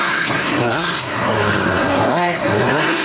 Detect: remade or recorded remade